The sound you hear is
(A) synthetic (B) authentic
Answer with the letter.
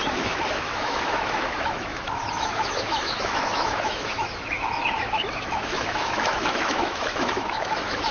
A